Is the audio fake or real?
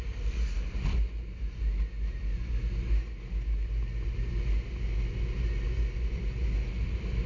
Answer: real